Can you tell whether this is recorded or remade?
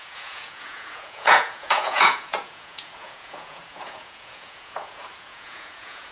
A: remade